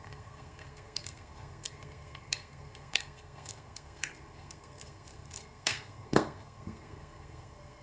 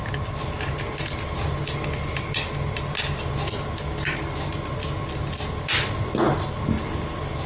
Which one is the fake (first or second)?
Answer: first